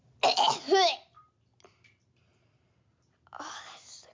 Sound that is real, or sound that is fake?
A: real